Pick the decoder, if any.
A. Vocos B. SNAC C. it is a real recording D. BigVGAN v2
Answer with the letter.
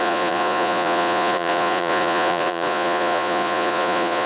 A